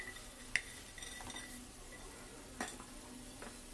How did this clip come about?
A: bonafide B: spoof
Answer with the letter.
A